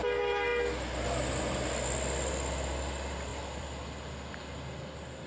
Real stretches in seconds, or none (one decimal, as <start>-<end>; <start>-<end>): 0.0-3.3; 3.8-5.3

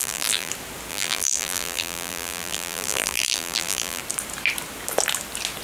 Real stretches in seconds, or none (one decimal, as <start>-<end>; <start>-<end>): 0.5-0.9; 4.0-5.6